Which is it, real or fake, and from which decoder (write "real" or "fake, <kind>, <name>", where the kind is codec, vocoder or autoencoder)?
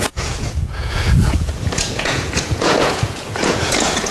fake, vocoder, Vocos